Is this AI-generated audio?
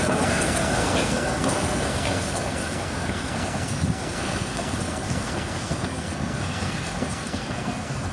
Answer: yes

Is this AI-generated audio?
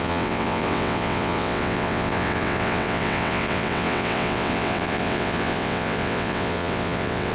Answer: yes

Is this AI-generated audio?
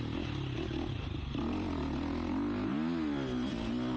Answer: no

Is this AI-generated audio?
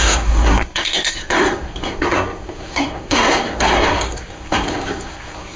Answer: yes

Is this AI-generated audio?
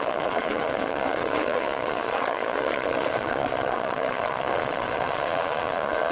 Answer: yes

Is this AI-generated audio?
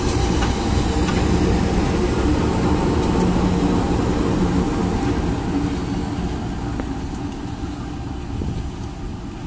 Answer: no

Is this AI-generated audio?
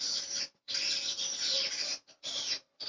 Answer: yes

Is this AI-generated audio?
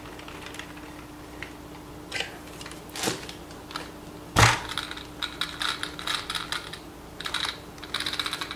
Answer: no